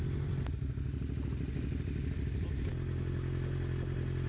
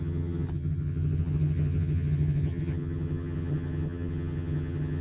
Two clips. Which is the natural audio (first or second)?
first